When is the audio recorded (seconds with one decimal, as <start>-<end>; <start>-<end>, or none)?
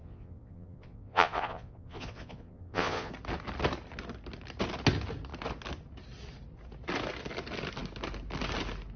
3.1-9.0